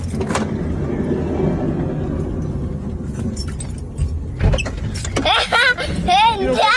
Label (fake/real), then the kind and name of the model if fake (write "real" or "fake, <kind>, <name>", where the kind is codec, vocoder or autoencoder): real